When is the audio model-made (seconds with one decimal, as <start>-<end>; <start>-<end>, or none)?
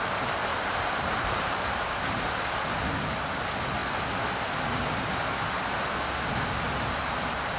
0.5-2.1